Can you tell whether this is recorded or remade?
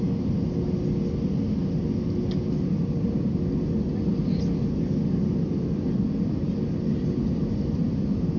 recorded